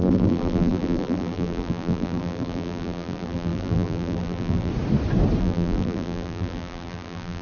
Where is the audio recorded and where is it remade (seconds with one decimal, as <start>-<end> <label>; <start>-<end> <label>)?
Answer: 0.0-4.7 remade; 4.7-5.4 recorded; 5.4-7.4 remade